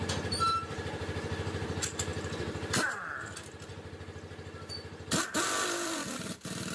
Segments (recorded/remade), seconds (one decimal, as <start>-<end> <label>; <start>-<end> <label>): 0.0-6.7 recorded